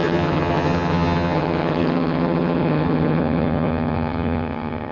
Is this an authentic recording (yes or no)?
no